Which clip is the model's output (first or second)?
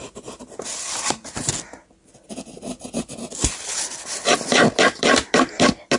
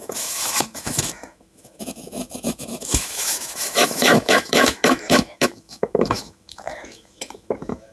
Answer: second